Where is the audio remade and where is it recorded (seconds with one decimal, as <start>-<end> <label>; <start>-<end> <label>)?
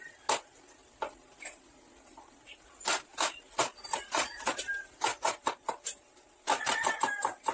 0.0-7.5 recorded